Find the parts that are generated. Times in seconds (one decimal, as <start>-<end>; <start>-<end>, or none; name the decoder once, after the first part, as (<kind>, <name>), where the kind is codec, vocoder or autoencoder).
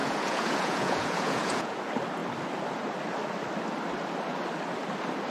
0.0-1.8 (vocoder, Vocos)